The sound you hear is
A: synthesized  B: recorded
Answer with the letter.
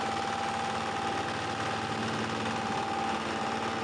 B